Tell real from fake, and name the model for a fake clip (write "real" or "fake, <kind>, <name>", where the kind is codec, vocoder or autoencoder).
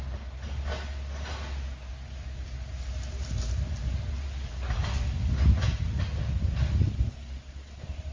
real